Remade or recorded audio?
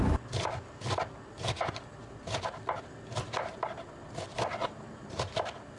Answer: recorded